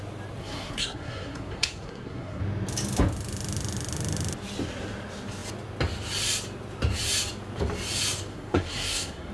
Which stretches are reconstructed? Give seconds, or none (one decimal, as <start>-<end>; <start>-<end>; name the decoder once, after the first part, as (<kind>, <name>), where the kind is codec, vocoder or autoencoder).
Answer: 0.4-2.4 (codec, SNAC); 8.3-9.3